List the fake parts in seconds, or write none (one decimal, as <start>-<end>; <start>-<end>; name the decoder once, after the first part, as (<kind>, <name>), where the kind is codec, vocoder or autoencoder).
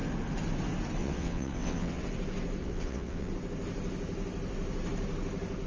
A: 1.0-2.0 (vocoder, WaveNeXt); 2.6-3.3